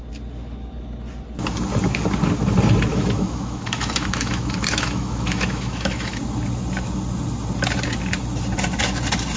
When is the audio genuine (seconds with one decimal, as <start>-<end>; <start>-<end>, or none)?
0.0-2.9; 6.2-9.4